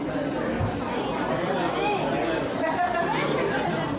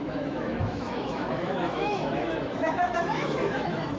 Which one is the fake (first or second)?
second